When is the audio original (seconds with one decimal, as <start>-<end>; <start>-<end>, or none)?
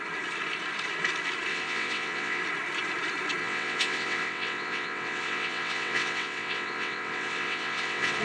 0.0-1.5; 2.4-3.4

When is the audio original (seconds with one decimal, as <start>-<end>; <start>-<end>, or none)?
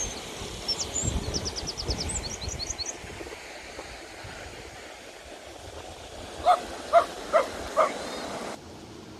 0.0-9.2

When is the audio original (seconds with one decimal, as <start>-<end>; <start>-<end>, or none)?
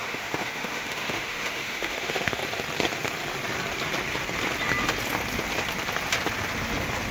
2.4-7.1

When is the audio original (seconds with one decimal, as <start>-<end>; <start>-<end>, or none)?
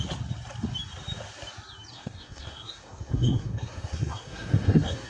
0.0-1.9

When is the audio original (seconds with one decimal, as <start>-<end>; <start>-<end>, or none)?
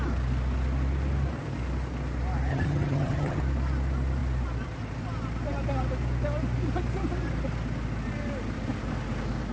0.0-2.5; 3.4-9.5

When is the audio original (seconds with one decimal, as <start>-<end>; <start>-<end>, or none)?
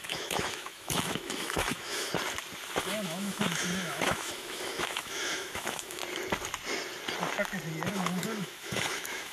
2.1-2.8; 6.0-7.9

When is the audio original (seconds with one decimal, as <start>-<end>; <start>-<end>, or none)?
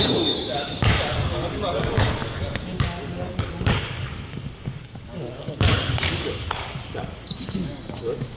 2.2-3.0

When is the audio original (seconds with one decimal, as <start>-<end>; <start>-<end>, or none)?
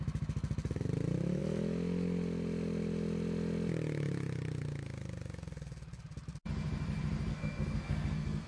0.0-7.3